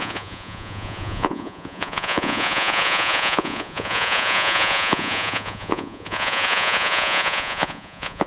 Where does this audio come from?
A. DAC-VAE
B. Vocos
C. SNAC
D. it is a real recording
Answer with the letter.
B